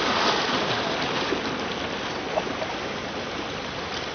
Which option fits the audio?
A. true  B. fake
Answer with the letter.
A